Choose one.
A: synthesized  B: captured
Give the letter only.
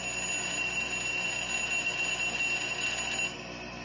B